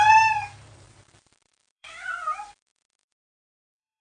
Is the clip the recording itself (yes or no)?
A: no